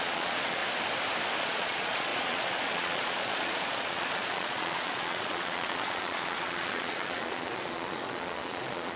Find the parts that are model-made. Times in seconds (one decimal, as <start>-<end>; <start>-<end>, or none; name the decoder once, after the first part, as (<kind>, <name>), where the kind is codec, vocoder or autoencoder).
0.0-0.6 (vocoder, Vocos); 1.4-9.0